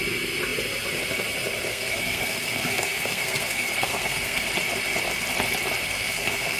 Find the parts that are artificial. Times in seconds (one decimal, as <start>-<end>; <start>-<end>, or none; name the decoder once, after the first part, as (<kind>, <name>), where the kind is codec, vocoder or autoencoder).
1.7-4.5 (codec, SNAC); 5.8-6.6

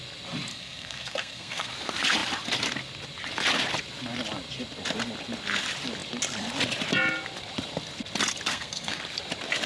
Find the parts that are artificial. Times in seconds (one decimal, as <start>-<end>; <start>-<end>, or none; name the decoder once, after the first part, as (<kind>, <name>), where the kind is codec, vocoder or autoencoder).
0.5-1.7 (codec, SNAC); 8.5-9.0

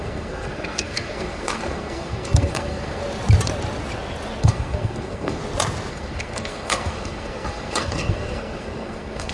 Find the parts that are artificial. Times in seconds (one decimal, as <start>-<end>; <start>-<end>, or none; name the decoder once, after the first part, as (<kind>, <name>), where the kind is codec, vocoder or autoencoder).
0.0-3.0 (codec, SNAC); 4.4-5.4; 5.9-9.3

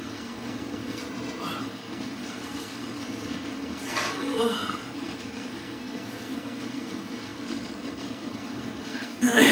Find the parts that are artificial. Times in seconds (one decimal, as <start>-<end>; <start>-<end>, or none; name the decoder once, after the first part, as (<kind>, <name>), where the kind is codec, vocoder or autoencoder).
0.0-1.0 (codec, SNAC); 1.6-9.5

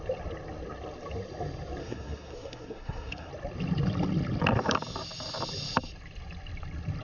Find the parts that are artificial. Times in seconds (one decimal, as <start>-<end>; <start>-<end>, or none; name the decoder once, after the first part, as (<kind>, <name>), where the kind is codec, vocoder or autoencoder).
1.8-3.3 (codec, SNAC)

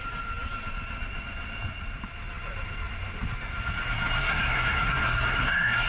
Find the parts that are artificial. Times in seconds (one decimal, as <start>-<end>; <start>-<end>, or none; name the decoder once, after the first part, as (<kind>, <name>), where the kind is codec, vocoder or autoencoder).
4.2-5.9 (codec, SNAC)

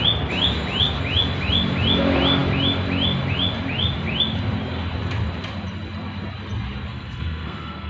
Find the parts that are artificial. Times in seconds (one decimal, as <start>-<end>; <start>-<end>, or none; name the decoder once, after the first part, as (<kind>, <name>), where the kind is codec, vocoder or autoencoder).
6.9-7.9 (codec, SNAC)

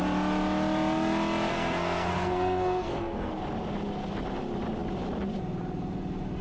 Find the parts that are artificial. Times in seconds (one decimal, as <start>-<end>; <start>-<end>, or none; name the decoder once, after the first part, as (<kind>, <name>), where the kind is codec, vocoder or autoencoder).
1.5-3.3 (codec, SNAC)